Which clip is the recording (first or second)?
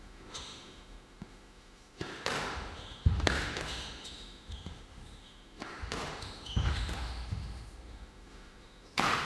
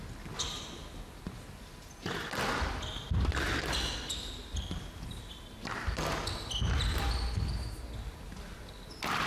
second